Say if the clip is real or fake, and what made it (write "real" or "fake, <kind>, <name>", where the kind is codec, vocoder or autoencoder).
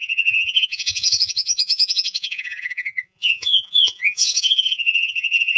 fake, vocoder, Vocos